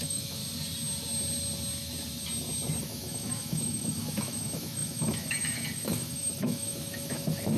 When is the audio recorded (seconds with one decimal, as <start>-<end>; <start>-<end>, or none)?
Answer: 0.4-2.8